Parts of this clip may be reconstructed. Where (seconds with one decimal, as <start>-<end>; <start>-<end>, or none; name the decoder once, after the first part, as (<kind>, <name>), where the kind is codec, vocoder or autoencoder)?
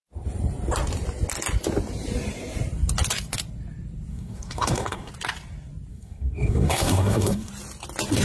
4.1-5.1 (codec, SNAC); 5.9-7.5